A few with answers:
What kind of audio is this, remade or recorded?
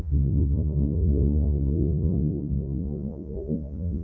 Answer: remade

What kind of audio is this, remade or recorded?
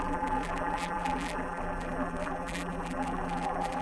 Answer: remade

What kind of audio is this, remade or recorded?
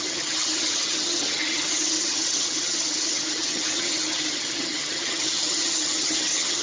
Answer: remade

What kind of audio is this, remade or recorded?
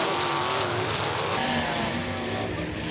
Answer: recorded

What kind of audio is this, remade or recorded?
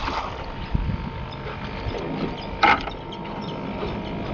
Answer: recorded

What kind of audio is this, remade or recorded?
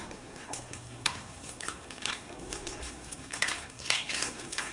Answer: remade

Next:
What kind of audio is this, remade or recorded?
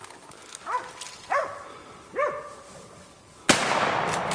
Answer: recorded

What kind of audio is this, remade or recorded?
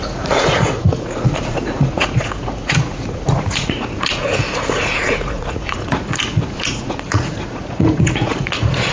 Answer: remade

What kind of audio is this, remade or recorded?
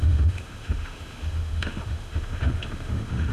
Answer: remade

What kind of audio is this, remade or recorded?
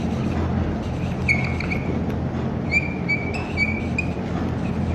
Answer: recorded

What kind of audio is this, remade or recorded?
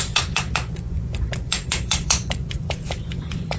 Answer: remade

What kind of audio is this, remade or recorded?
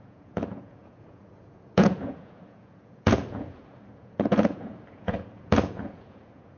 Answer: remade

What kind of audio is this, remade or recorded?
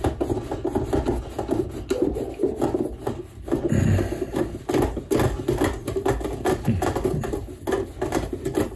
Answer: recorded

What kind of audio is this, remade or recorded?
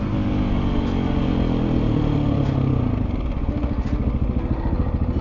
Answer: recorded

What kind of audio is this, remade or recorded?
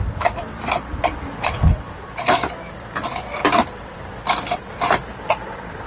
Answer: remade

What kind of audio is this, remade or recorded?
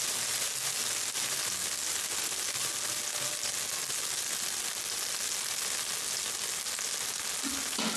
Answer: recorded